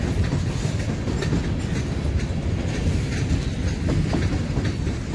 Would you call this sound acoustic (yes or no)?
yes